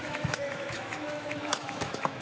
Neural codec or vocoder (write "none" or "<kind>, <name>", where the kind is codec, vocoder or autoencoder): autoencoder, DAC-VAE